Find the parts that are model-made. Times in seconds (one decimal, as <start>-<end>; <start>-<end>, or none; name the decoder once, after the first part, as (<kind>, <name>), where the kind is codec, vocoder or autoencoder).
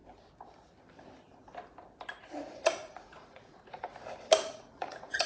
2.2-3.9 (vocoder, Vocos); 4.4-5.3